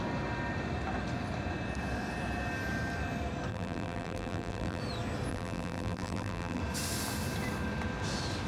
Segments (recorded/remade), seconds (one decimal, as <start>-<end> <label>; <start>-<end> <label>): 0.0-3.5 recorded; 3.5-4.8 remade; 4.8-5.3 recorded; 5.3-6.6 remade; 6.6-8.5 recorded